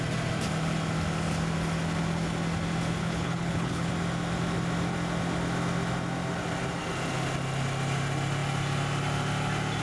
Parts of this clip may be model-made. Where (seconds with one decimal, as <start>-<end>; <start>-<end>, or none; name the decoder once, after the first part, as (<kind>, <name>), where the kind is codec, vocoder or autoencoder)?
3.0-3.9 (codec, HILCodec)